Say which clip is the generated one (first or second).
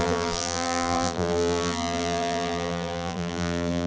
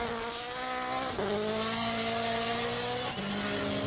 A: first